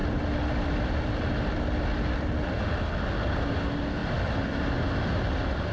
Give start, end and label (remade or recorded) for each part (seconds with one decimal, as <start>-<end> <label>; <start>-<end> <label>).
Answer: 0.0-2.9 remade; 2.9-4.0 recorded; 4.0-4.7 remade; 4.7-5.7 recorded